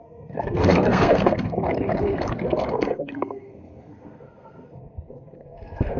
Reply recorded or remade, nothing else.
remade